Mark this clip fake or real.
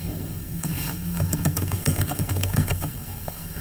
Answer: fake